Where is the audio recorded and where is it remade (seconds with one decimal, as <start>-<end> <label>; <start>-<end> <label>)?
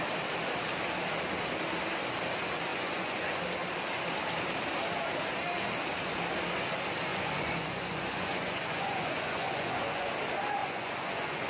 0.0-2.7 recorded; 2.7-3.4 remade; 3.4-7.1 recorded; 7.1-10.1 remade; 10.1-10.6 recorded; 10.6-11.5 remade